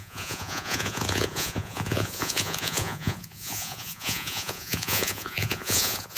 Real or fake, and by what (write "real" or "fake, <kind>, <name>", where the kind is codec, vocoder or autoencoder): fake, vocoder, Vocos